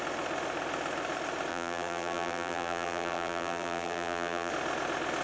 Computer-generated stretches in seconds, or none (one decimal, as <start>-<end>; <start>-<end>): 1.5-4.5